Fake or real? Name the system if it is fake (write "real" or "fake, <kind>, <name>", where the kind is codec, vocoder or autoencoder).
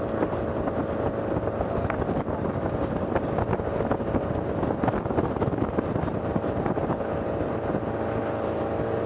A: real